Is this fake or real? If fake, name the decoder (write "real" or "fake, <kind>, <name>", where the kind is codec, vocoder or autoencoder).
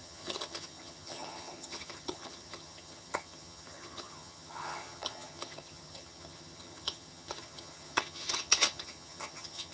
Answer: fake, vocoder, HiFi-GAN